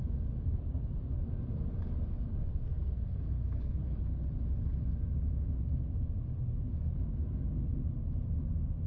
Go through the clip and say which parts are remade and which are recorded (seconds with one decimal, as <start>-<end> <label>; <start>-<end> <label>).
0.0-2.5 recorded; 2.5-4.0 remade; 4.0-8.9 recorded